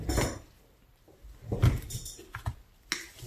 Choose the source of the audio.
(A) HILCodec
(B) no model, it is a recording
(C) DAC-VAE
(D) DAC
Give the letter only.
B